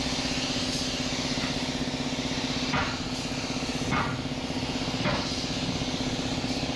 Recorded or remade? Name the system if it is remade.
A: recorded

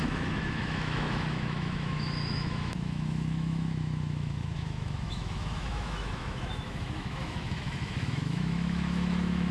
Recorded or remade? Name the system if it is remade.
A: remade, autoencoder, DAC-VAE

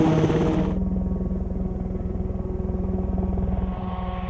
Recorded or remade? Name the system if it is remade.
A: recorded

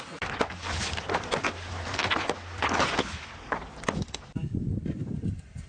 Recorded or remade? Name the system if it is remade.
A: recorded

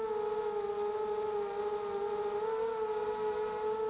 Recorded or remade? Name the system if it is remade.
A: recorded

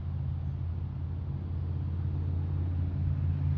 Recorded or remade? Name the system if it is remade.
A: recorded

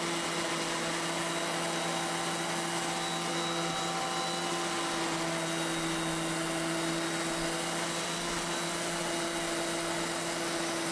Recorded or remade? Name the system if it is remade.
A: recorded